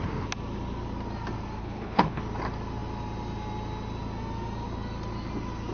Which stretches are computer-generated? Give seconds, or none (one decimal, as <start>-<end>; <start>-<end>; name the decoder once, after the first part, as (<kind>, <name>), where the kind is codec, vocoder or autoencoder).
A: 1.6-2.2 (codec, HILCodec)